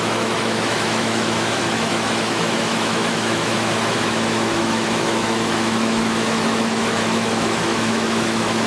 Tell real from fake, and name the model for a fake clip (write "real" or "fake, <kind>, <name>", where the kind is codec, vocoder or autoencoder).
fake, autoencoder, DAC-VAE